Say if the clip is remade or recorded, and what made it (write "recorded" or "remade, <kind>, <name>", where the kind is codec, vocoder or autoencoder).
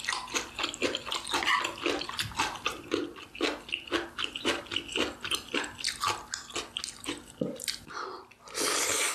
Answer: recorded